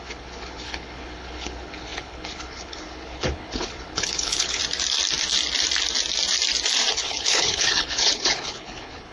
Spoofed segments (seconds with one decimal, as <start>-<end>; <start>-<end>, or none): 0.0-4.6; 6.9-9.1